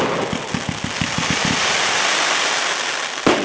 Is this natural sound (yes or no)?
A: yes